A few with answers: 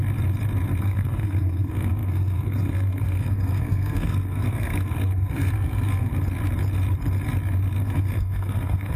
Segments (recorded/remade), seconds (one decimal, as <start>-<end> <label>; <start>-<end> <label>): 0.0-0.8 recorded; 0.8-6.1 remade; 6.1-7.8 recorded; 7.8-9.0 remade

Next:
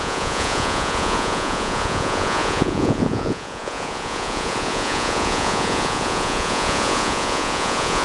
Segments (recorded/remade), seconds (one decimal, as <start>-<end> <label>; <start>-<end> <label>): 0.0-8.0 remade

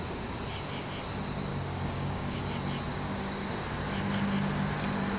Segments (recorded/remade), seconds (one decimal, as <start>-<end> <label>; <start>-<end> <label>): 0.0-1.5 recorded; 1.5-2.4 remade; 2.4-2.9 recorded; 2.9-3.5 remade; 3.5-5.2 recorded

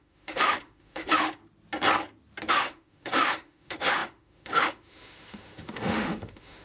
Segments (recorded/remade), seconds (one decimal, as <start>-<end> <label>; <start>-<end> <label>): 0.0-1.4 remade; 1.4-2.5 recorded; 2.5-6.6 remade

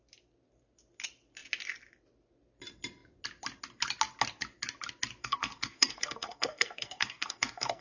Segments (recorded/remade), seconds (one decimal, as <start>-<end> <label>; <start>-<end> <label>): 0.0-5.2 recorded; 5.2-7.8 remade

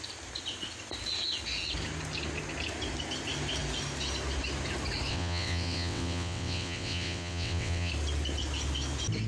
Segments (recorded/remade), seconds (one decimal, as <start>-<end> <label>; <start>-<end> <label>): 0.0-5.1 recorded; 5.1-7.9 remade; 7.9-9.3 recorded

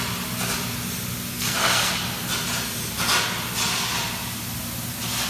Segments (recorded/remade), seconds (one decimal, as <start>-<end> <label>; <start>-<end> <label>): 0.0-1.3 recorded; 1.3-1.9 remade; 1.9-5.3 recorded

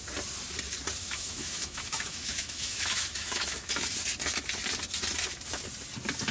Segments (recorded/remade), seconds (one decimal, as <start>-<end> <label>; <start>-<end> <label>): 0.0-1.0 recorded; 1.0-3.9 remade; 3.9-6.3 recorded